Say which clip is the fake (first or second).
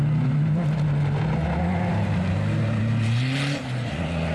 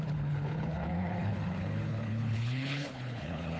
second